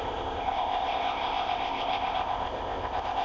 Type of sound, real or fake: fake